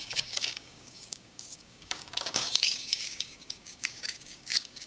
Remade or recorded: remade